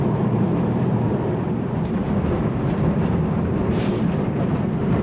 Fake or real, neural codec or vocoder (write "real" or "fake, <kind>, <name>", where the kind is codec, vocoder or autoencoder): fake, vocoder, BigVGAN v2